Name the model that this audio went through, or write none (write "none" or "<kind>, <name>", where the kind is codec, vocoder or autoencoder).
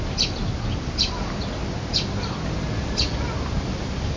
none